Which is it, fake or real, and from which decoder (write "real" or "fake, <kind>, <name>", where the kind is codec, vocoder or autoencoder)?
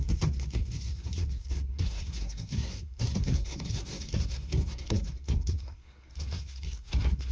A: fake, codec, SNAC